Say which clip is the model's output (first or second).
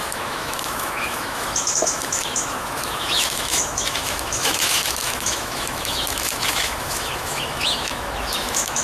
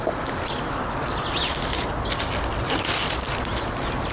first